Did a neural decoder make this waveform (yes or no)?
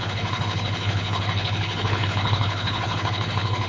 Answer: yes